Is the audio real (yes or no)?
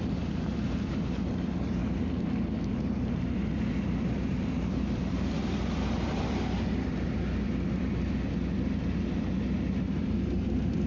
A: no